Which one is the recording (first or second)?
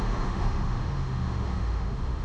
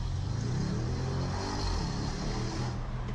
second